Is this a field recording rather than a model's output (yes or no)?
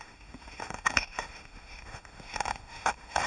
no